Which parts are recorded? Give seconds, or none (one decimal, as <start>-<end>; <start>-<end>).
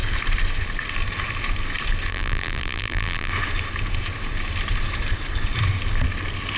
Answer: 0.0-2.1; 3.3-6.6